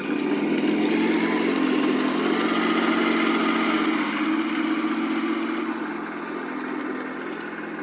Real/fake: real